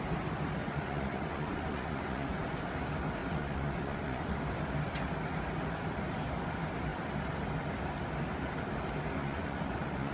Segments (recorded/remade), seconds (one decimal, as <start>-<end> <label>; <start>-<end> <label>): 0.0-0.6 recorded; 0.6-2.6 remade; 2.6-3.2 recorded; 3.2-4.4 remade; 4.4-9.2 recorded; 9.2-10.1 remade